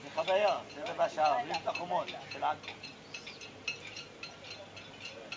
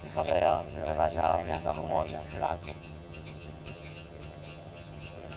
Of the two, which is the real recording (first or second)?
first